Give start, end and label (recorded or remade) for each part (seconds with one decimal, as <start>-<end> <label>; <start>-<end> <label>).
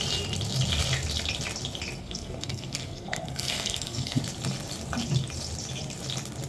0.0-2.0 recorded; 2.0-4.2 remade; 4.2-6.5 recorded